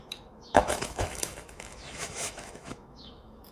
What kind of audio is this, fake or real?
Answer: fake